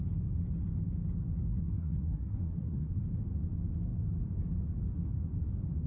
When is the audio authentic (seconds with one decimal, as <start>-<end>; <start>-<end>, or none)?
0.0-1.5; 3.0-5.9